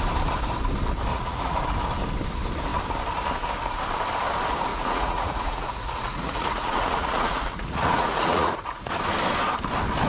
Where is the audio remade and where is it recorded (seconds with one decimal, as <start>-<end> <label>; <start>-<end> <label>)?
0.0-1.1 recorded; 1.1-1.6 remade; 1.6-4.7 recorded; 4.7-8.9 remade; 8.9-10.1 recorded

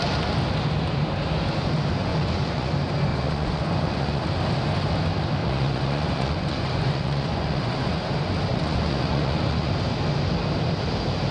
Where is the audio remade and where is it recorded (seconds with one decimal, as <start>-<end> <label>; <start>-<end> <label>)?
0.0-2.1 recorded; 2.1-2.7 remade; 2.7-3.1 recorded; 3.1-4.2 remade; 4.2-5.4 recorded; 5.4-7.9 remade; 7.9-8.5 recorded; 8.5-9.7 remade; 9.7-11.3 recorded

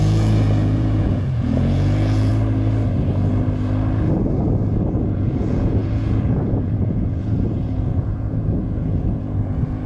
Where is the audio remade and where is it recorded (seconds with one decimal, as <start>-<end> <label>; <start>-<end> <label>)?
0.0-2.3 remade; 2.3-5.0 recorded; 5.0-9.9 remade

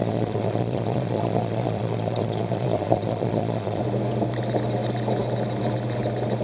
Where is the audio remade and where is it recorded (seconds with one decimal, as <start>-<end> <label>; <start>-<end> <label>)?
0.0-3.8 remade; 3.8-6.4 recorded